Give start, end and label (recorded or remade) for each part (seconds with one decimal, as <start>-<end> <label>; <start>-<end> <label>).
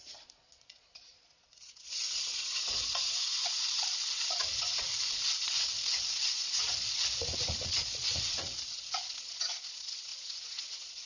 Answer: 0.0-11.1 remade